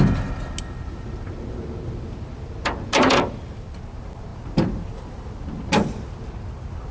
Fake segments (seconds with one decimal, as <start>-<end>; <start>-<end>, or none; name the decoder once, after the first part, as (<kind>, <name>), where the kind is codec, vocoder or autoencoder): none